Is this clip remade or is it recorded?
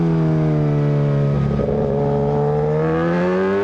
recorded